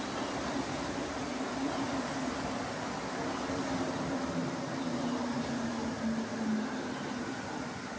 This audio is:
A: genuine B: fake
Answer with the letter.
A